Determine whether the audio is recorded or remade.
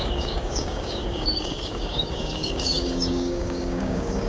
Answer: remade